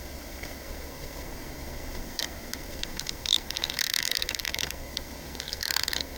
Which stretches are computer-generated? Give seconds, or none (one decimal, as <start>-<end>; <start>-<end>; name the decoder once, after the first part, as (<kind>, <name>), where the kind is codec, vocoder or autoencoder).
0.0-6.2 (codec, SNAC)